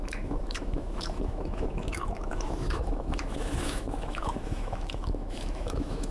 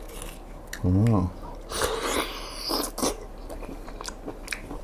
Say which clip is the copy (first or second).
first